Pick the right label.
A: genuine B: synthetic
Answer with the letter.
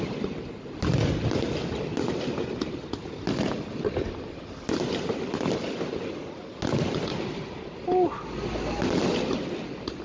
A